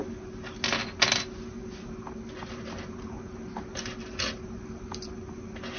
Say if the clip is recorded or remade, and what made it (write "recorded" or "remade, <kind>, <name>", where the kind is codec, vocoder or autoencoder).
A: recorded